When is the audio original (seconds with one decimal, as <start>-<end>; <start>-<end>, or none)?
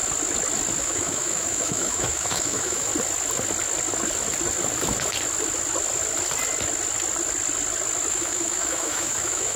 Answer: 0.0-0.8; 2.9-8.1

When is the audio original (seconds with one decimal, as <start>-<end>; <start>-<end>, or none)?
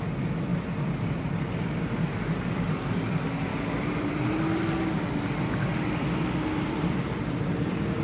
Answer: 0.0-3.5